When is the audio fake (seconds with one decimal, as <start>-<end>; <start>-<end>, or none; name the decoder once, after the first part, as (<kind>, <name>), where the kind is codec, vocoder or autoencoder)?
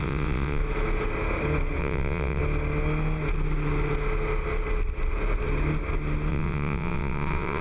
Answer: 0.0-0.6 (vocoder, WaveNeXt); 1.8-2.4; 6.3-7.6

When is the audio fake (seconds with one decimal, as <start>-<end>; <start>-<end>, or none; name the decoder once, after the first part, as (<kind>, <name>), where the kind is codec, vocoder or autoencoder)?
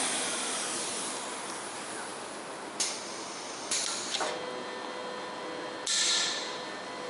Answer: none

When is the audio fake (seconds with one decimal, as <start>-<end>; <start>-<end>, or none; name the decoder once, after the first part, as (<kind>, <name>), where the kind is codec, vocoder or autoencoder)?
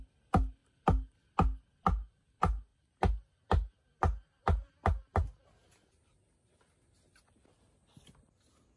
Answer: none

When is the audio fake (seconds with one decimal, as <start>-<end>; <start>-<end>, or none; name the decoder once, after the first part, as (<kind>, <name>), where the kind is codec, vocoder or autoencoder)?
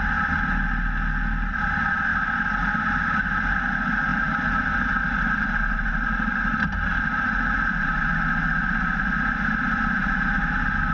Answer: none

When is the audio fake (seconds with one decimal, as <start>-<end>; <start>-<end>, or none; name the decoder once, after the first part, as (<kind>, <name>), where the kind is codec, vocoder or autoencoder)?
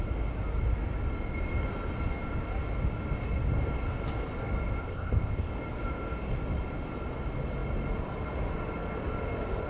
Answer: 4.8-5.5 (codec, ZipCodec)